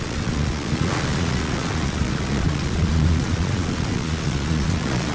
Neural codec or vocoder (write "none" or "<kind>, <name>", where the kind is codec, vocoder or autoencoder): vocoder, Vocos